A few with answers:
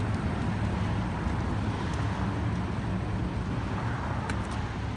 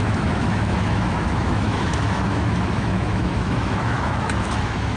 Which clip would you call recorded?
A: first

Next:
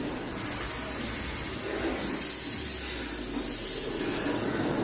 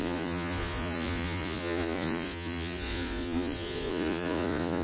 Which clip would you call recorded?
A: first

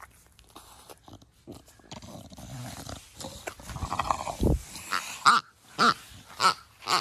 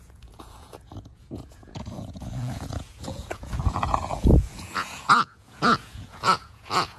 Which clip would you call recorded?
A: first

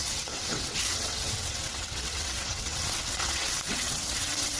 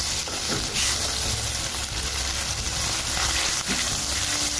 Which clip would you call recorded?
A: second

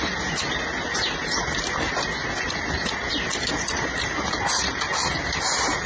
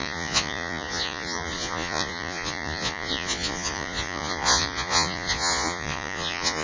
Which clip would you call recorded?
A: first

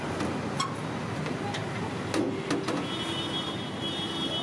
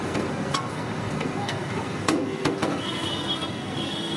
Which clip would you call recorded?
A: first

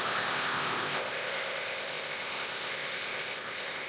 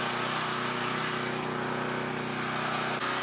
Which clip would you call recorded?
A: second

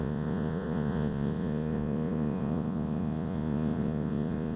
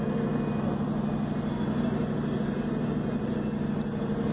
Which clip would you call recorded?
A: second